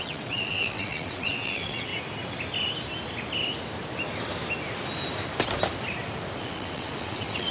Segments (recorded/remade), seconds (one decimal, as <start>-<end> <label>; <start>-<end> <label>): 0.0-1.9 remade; 1.9-6.4 recorded; 6.4-7.5 remade